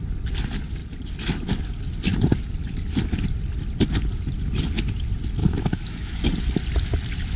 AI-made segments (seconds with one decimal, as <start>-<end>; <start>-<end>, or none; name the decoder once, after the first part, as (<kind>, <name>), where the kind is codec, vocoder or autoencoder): 5.4-6.2 (autoencoder, DAC-VAE)